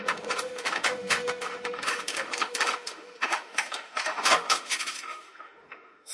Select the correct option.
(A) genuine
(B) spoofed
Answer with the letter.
B